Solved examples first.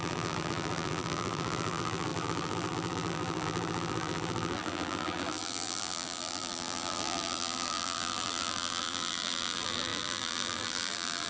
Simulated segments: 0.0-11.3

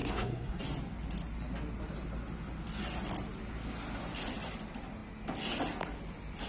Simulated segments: 0.0-0.6

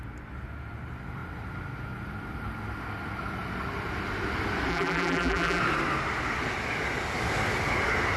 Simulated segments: 4.7-5.6

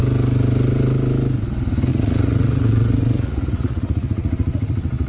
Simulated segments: 1.9-5.1

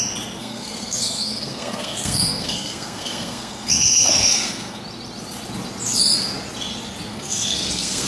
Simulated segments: 0.4-4.8; 7.1-8.1

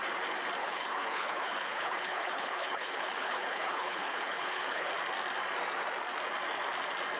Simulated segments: 0.6-4.9

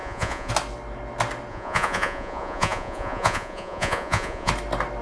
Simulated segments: 0.0-0.5; 1.5-4.5